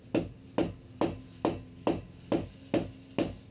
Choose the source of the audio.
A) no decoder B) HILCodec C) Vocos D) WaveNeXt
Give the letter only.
A